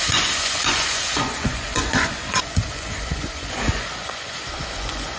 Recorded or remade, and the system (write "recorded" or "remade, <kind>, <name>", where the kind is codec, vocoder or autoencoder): remade, vocoder, Vocos